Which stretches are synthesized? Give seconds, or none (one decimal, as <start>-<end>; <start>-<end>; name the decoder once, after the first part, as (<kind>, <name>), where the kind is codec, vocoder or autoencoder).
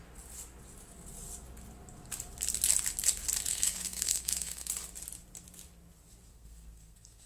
3.5-4.7 (codec, SNAC); 6.3-7.3